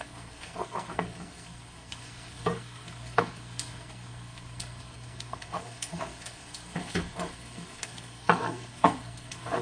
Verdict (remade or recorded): remade